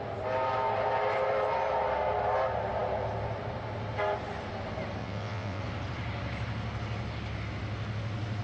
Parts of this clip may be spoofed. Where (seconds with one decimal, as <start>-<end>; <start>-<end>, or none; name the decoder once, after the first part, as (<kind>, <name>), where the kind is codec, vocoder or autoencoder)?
5.0-5.6 (vocoder, WaveNeXt)